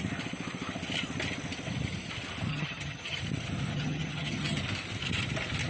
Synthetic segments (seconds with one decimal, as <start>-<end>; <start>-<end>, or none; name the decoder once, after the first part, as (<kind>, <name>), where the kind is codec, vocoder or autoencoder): 2.5-3.2 (vocoder, HiFi-GAN); 3.7-4.6